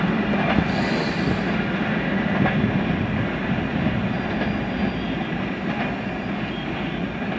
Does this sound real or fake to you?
real